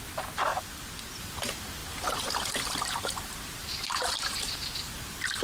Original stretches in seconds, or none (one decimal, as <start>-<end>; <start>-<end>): 0.0-1.8; 5.0-5.4